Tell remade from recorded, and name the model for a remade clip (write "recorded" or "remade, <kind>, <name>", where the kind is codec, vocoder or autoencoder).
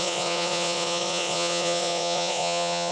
remade, vocoder, Vocos